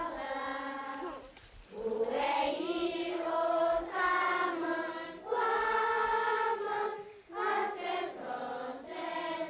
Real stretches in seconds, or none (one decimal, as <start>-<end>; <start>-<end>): 0.0-9.5